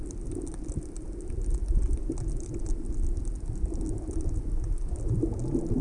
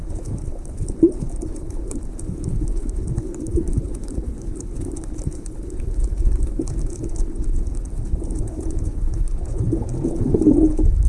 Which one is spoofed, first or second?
second